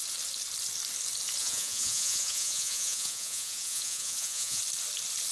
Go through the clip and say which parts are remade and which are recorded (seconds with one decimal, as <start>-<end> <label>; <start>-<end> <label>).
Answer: 0.0-1.4 recorded; 1.4-4.6 remade; 4.6-5.3 recorded